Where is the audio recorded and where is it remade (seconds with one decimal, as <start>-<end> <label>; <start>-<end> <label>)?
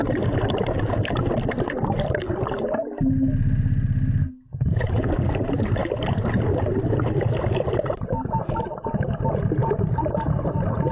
0.0-10.9 recorded